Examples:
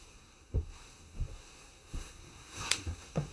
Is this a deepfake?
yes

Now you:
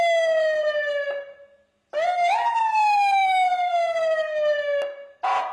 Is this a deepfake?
no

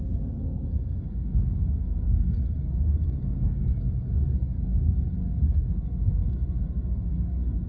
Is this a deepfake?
yes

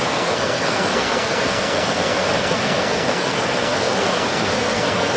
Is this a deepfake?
yes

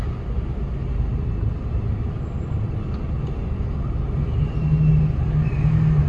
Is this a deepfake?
no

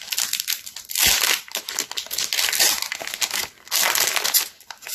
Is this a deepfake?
no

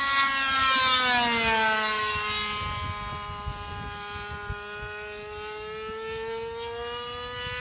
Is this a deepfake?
no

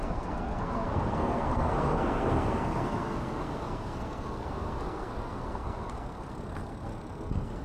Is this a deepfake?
yes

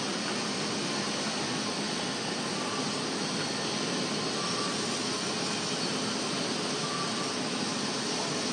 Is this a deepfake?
no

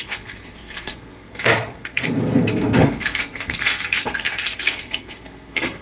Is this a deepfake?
yes